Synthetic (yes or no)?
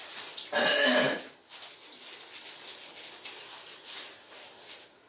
no